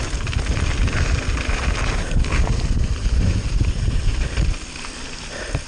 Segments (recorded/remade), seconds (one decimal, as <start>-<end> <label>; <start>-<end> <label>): 0.0-3.0 recorded; 3.0-4.0 remade; 4.0-5.7 recorded